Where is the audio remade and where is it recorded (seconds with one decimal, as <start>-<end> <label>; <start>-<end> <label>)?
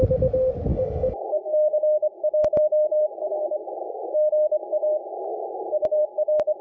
0.0-0.7 recorded; 0.7-4.3 remade; 4.3-5.3 recorded; 5.3-6.0 remade; 6.0-6.6 recorded